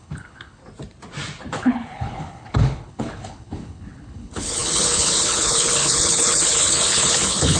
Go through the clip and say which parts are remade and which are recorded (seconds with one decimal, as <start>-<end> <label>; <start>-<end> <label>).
0.0-0.6 remade; 0.6-1.5 recorded; 1.5-7.6 remade